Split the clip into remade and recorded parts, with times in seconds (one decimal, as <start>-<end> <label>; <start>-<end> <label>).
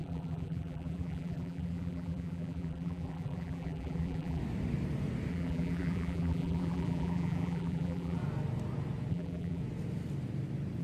0.0-4.4 remade; 4.4-5.3 recorded; 5.3-8.2 remade; 8.2-9.1 recorded; 9.1-9.6 remade; 9.6-10.8 recorded